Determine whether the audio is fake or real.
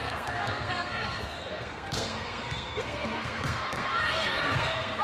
fake